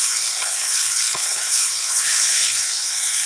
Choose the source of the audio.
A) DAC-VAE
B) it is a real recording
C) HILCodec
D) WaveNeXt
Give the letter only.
C